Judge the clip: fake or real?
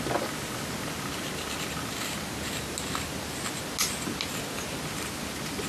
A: real